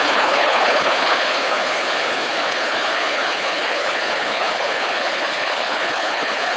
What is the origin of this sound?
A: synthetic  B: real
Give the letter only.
A